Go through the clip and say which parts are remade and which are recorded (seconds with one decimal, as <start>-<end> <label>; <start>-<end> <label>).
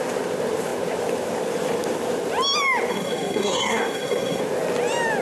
0.0-2.9 recorded; 2.9-4.4 remade; 4.4-5.2 recorded